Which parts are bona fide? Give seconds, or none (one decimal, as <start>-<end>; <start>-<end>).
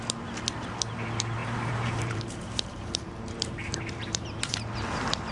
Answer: 0.0-1.4; 4.4-5.3